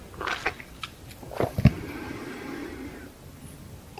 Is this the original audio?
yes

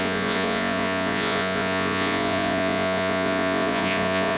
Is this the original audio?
no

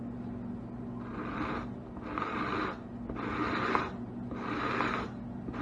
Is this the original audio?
yes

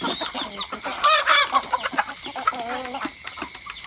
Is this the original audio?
yes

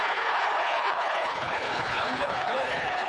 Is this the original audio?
no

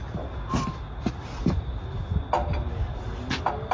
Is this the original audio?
yes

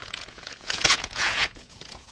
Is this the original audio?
no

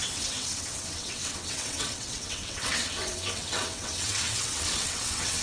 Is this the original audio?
no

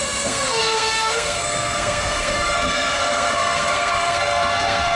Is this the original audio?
no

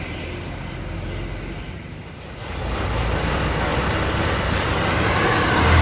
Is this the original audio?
yes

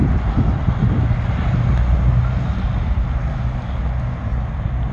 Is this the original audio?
yes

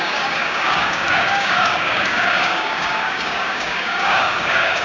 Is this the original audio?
no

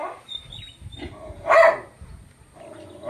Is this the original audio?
yes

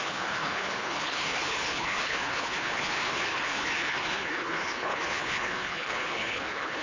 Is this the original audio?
no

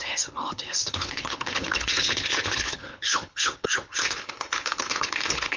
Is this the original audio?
no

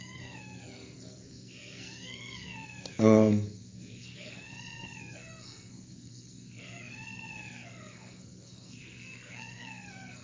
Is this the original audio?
no